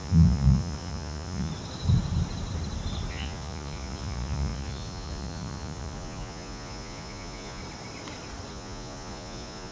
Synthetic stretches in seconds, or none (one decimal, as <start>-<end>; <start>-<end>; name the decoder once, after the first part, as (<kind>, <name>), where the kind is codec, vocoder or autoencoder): 0.0-1.5 (vocoder, Vocos); 3.1-7.6; 8.5-9.7